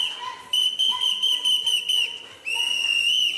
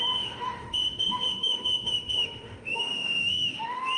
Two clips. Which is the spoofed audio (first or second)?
second